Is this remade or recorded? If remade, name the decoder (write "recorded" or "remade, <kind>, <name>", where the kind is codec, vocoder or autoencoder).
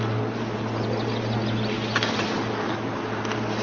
recorded